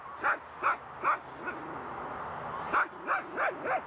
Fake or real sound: real